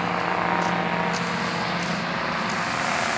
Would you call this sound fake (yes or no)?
no